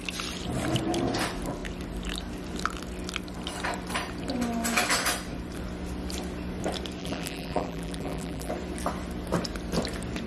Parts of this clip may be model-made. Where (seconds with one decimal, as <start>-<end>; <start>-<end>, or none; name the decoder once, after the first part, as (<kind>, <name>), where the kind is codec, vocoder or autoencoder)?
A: 7.0-8.5 (vocoder, BigVGAN v2)